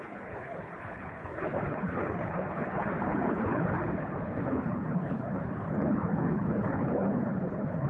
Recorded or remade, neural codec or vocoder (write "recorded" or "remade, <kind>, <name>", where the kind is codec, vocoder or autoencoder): remade, codec, HILCodec